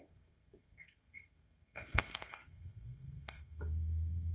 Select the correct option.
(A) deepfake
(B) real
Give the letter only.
A